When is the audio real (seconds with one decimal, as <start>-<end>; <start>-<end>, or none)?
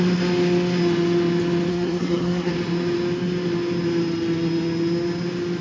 0.0-1.7; 2.5-5.6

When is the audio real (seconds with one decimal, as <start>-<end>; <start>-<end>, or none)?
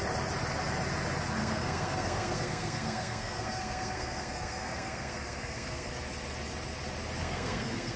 0.0-1.4; 5.9-7.2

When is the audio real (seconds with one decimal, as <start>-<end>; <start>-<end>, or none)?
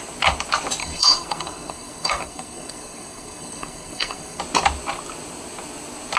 0.0-0.8; 4.4-6.2